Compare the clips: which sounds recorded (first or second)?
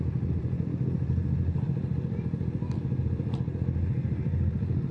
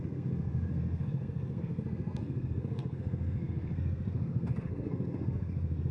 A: first